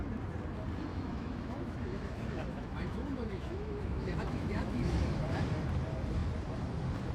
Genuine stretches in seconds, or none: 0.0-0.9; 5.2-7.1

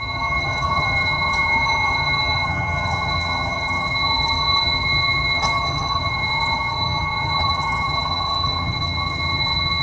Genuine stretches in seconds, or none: none

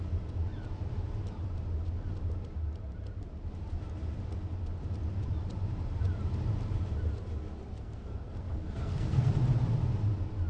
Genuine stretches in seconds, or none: 0.0-7.7; 9.3-10.5

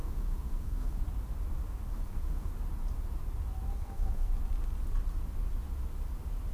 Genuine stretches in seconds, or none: 1.0-1.9; 2.5-3.7; 4.3-6.5

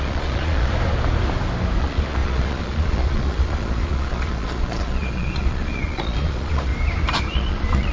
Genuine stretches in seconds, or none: 0.7-1.8; 6.7-7.3

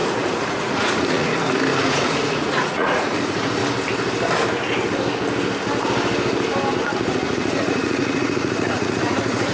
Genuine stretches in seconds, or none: 1.3-1.8; 3.6-6.7

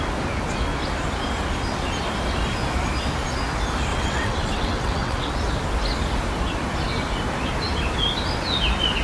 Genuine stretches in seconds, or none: 0.0-3.9; 5.3-9.0